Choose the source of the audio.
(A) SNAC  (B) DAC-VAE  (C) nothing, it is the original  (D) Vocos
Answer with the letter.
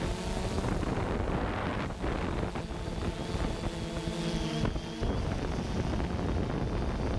C